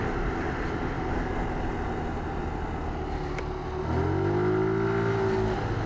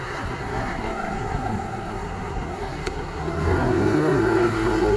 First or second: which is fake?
second